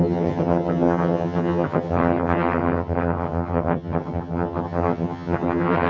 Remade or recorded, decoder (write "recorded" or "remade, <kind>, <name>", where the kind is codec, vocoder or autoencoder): remade, vocoder, HiFi-GAN